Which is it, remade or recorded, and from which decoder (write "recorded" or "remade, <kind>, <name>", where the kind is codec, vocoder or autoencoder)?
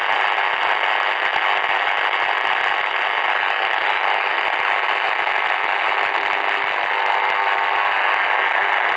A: recorded